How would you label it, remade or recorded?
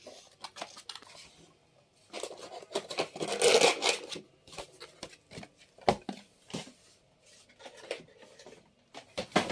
recorded